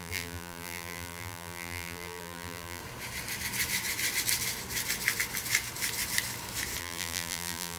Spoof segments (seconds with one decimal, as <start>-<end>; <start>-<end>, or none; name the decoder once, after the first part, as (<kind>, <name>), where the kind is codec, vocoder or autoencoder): 0.0-2.8 (vocoder, BigVGAN v2); 6.8-7.8